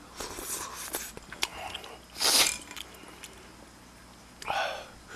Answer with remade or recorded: recorded